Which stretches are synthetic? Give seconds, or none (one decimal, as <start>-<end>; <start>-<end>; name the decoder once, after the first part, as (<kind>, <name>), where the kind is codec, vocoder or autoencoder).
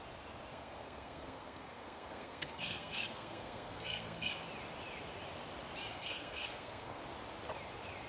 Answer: 0.5-4.3 (codec, SNAC); 5.9-7.0